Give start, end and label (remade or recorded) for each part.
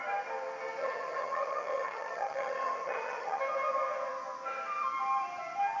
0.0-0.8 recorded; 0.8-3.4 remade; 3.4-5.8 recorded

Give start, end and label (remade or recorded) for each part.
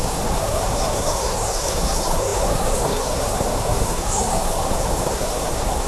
0.0-5.9 remade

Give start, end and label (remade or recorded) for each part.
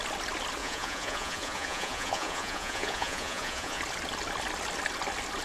0.0-0.6 recorded; 0.6-3.8 remade; 3.8-5.4 recorded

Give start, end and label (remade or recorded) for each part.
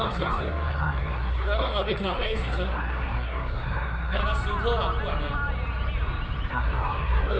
0.0-4.2 remade; 4.2-6.5 recorded; 6.5-7.4 remade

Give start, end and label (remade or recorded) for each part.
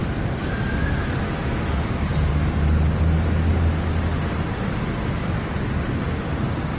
0.0-6.8 recorded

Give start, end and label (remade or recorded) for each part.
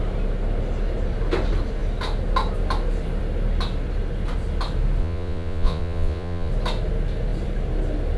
0.0-5.0 recorded; 5.0-6.5 remade; 6.5-8.2 recorded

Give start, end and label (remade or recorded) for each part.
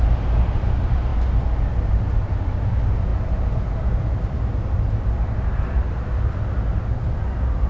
0.0-7.7 recorded